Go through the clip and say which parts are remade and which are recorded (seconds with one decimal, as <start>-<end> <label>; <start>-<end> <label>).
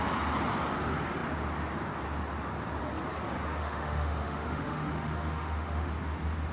0.0-3.6 recorded; 3.6-5.9 remade; 5.9-6.5 recorded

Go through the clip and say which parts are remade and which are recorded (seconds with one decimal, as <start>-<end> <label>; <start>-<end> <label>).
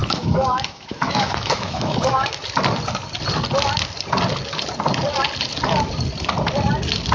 0.0-2.4 remade; 2.4-7.1 recorded